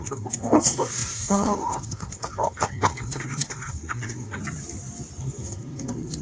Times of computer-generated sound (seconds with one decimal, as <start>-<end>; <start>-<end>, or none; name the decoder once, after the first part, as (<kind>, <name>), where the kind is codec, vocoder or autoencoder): 0.0-4.4 (codec, SNAC); 5.2-6.2

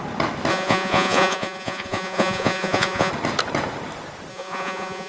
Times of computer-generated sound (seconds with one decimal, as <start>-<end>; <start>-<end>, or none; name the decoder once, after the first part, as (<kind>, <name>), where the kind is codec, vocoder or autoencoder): 0.5-3.1 (vocoder, Vocos); 4.3-5.1

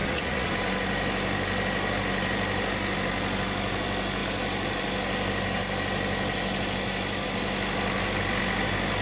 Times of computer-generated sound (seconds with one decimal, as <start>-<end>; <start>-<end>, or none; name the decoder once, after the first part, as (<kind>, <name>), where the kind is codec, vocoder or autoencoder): 0.0-0.5 (vocoder, Vocos)

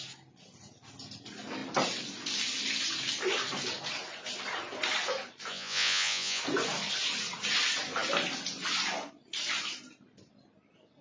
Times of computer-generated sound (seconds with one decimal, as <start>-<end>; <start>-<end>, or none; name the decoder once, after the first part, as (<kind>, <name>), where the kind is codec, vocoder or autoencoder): 5.5-6.4 (vocoder, Vocos)